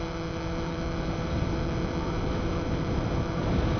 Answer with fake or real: fake